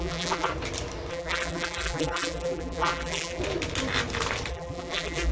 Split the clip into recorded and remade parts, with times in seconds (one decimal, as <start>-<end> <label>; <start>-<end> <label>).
0.0-0.5 remade; 0.5-1.1 recorded; 1.1-3.4 remade; 3.4-4.5 recorded; 4.5-5.3 remade